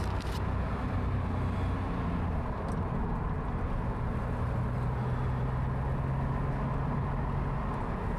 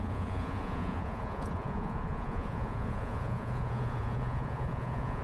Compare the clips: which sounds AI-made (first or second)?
second